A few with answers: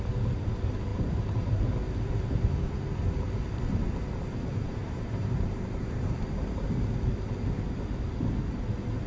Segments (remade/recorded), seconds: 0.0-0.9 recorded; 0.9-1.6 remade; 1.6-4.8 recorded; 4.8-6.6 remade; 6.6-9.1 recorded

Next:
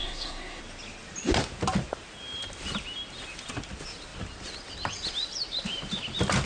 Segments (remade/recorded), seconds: 0.0-0.6 remade; 0.6-6.5 recorded